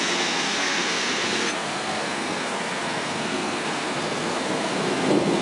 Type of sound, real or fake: fake